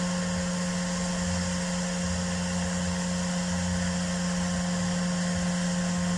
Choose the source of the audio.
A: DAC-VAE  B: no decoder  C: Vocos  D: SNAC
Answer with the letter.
B